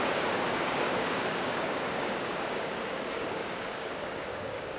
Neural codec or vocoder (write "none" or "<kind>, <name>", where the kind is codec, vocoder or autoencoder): codec, DAC